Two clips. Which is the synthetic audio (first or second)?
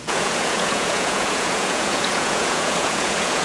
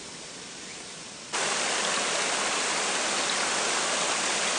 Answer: first